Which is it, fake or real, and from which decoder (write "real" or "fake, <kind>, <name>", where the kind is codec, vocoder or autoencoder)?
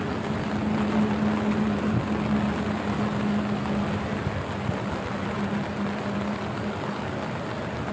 real